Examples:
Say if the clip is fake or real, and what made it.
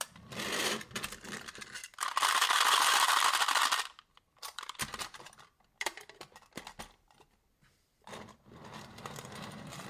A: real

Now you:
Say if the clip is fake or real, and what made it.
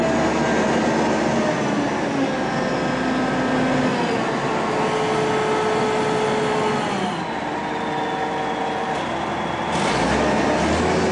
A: real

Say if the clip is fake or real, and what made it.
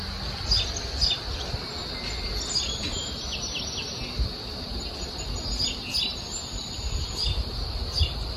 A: real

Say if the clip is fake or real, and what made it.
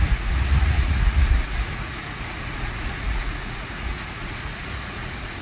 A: fake, vocoder, Vocos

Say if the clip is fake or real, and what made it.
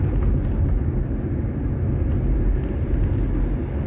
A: real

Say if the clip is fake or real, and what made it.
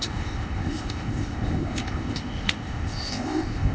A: fake, codec, ZipCodec